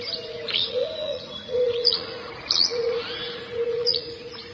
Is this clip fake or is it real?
fake